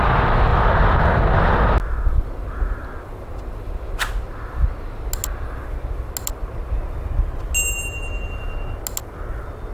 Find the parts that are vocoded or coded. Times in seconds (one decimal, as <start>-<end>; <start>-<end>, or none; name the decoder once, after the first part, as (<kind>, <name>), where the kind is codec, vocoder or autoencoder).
none